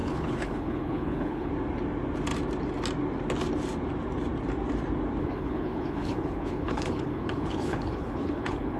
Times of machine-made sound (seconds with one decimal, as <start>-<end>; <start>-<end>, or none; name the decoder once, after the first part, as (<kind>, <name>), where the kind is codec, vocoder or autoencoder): 0.0-1.5 (codec, HILCodec); 5.2-8.8